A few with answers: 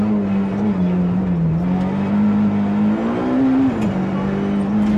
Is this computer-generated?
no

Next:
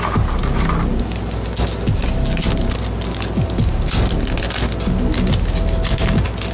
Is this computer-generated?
no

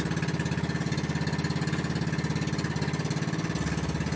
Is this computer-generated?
no